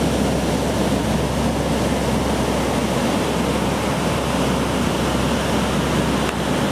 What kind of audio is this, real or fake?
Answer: real